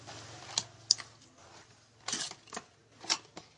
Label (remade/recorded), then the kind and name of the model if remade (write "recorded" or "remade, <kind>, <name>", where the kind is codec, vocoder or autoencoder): recorded